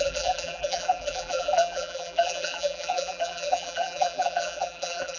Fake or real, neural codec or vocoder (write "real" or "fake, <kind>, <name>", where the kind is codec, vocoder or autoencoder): fake, vocoder, BigVGAN v2